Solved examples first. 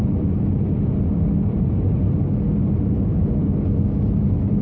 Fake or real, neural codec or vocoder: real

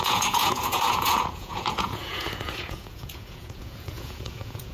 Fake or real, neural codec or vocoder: fake, vocoder, Vocos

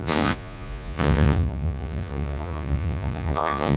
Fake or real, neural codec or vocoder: fake, vocoder, Vocos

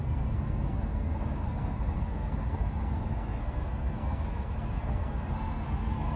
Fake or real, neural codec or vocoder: fake, codec, SNAC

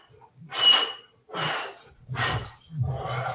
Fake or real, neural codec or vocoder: real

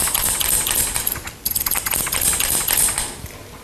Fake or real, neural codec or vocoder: real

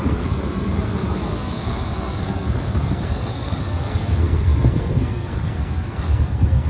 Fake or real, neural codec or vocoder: fake, codec, SNAC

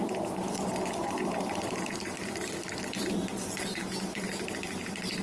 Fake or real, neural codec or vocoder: real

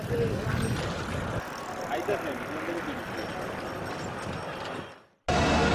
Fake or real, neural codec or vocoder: real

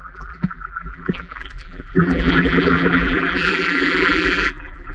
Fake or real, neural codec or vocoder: fake, vocoder, BigVGAN v2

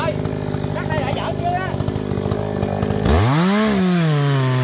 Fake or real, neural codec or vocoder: real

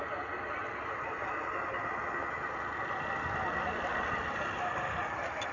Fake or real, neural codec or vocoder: real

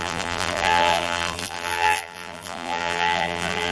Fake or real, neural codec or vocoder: fake, vocoder, BigVGAN v2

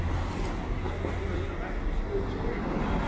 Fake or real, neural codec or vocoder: real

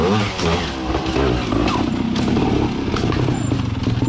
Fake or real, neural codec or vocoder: real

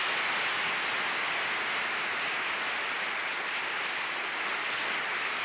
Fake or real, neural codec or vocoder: real